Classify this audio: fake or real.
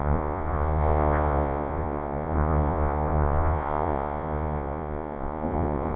fake